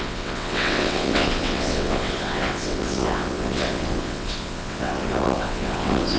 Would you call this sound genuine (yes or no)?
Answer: no